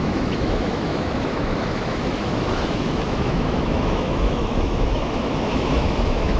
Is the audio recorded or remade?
remade